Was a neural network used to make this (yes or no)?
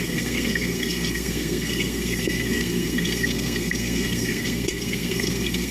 yes